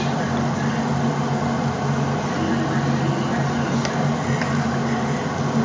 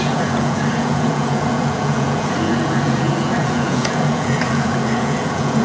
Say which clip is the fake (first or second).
second